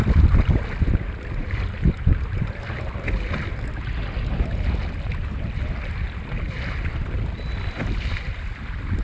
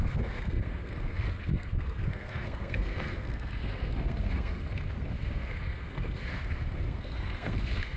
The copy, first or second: second